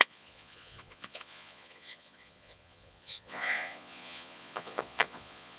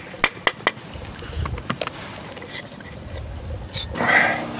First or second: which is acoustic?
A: second